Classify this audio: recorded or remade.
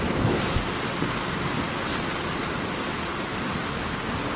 recorded